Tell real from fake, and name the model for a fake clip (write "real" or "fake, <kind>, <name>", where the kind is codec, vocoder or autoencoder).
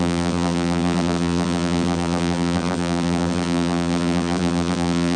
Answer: fake, vocoder, BigVGAN v2